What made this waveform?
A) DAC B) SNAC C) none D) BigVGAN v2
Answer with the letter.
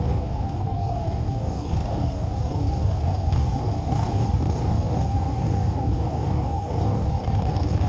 A